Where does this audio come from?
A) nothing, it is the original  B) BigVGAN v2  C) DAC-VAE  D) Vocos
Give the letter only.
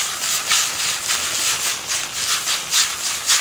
A